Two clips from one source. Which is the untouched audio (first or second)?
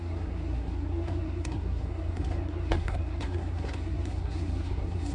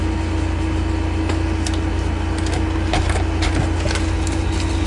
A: second